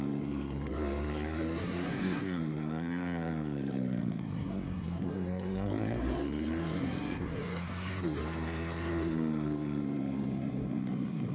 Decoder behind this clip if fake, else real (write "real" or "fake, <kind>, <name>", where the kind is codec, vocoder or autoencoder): fake, codec, SNAC